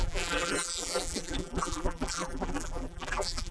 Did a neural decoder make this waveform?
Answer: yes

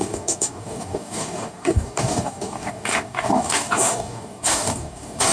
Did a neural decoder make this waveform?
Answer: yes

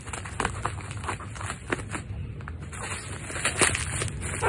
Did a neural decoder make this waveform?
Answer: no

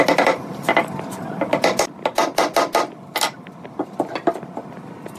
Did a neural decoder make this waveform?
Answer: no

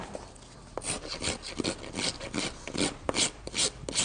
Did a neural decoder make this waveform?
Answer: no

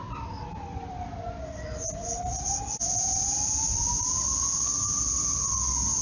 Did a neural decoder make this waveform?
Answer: no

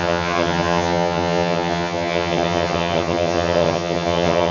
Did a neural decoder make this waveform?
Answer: yes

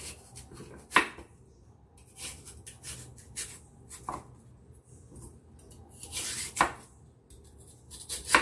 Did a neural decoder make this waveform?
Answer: no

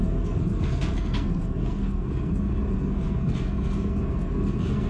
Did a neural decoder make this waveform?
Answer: yes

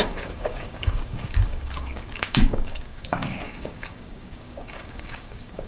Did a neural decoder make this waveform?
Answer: yes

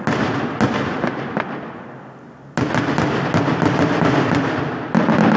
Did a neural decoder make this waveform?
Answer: no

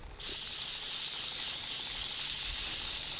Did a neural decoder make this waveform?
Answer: no